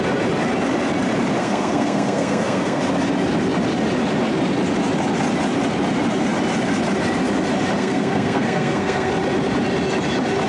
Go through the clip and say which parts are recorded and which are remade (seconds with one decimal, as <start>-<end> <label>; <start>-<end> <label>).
0.0-1.4 recorded; 1.4-2.8 remade; 2.8-7.8 recorded; 7.8-9.1 remade; 9.1-10.5 recorded